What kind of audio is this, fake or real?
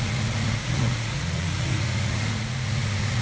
fake